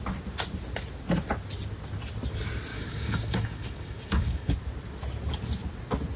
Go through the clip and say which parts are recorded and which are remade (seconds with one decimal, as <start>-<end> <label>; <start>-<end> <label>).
0.0-2.7 recorded; 2.7-4.5 remade; 4.5-6.2 recorded

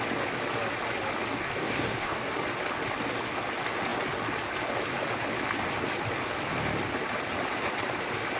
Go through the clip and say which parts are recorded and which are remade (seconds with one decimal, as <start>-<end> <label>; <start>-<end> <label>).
0.0-1.3 recorded; 1.3-2.3 remade; 2.3-8.4 recorded